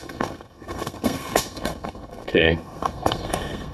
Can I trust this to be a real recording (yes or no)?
no